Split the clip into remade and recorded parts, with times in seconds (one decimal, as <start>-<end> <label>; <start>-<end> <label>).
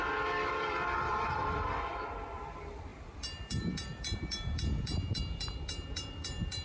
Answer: 0.0-0.5 recorded; 0.5-6.6 remade